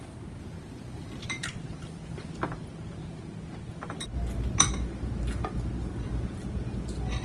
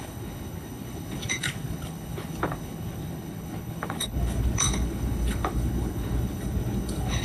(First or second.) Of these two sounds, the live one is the first